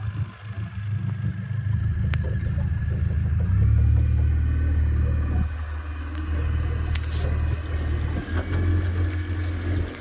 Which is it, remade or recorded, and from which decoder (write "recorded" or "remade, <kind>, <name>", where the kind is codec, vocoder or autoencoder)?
recorded